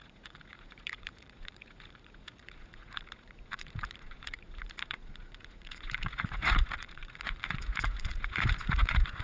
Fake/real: fake